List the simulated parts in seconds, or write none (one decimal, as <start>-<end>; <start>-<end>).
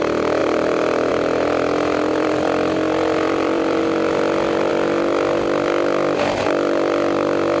0.4-1.1; 2.1-3.8